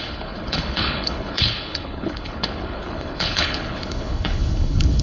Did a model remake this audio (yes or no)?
yes